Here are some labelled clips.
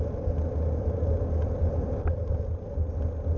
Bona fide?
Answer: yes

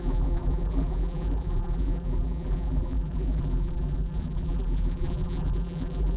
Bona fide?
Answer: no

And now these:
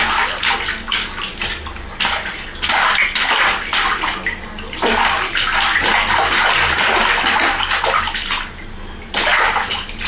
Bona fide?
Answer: yes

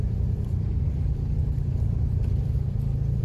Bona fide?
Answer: no